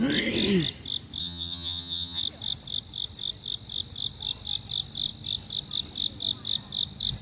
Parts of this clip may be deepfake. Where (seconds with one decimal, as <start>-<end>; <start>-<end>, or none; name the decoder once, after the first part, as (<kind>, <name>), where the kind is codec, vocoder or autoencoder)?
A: 1.2-2.2 (vocoder, HiFi-GAN)